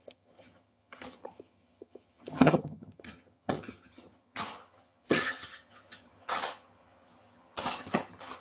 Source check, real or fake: fake